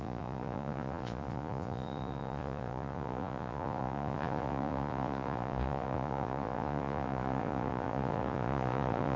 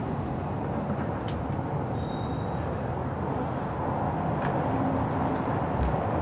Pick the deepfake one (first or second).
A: first